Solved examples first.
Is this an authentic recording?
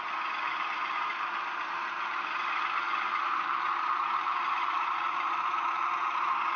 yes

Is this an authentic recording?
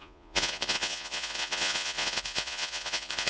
no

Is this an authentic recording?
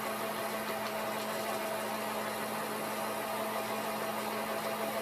yes